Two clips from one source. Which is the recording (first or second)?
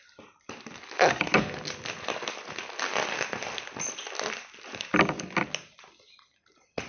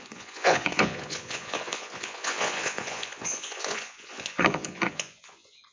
first